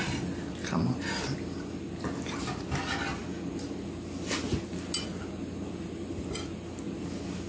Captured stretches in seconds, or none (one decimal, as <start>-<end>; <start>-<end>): 0.0-7.5